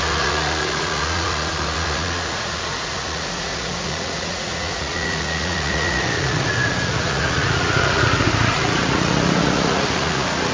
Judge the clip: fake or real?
fake